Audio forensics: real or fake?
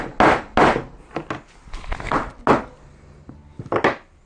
real